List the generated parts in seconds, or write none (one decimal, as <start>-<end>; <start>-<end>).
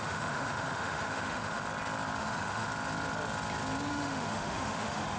0.0-1.6; 2.2-2.7; 3.9-5.2